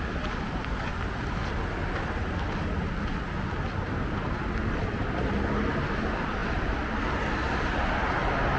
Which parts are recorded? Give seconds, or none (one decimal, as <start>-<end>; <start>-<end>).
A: 0.0-8.6